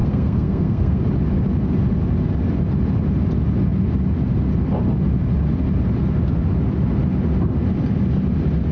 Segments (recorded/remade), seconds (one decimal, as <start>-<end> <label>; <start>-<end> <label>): 0.0-1.0 remade; 1.0-8.7 recorded

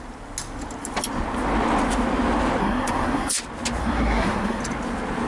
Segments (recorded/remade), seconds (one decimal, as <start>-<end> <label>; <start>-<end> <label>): 0.0-2.6 recorded; 2.6-3.3 remade; 3.3-3.8 recorded; 3.8-4.6 remade; 4.6-5.3 recorded

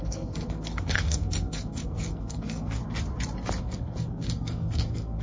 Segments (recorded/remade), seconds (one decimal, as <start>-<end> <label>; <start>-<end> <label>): 0.0-2.8 remade; 2.8-3.6 recorded; 3.6-5.2 remade

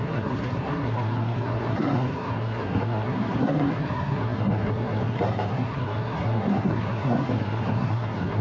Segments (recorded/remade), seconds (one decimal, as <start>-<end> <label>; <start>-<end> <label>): 0.0-8.4 remade

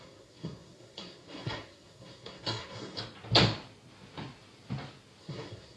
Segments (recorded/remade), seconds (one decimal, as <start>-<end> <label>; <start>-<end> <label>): 0.0-3.0 remade; 3.0-5.2 recorded; 5.2-5.8 remade

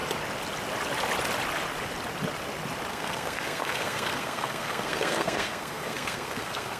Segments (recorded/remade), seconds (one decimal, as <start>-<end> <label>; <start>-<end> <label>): 0.0-2.9 recorded; 2.9-6.8 remade